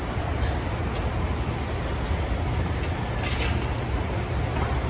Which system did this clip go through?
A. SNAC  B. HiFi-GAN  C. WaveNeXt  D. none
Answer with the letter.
D